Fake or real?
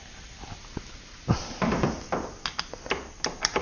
real